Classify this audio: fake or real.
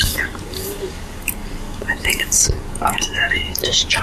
fake